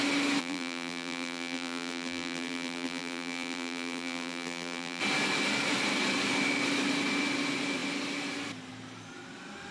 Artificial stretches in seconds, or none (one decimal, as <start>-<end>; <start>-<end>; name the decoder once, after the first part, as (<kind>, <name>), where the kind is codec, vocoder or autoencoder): 0.4-5.0 (vocoder, BigVGAN v2)